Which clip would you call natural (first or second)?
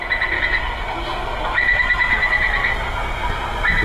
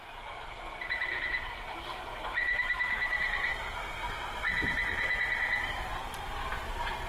first